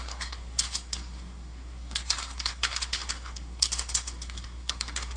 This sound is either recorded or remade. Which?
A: remade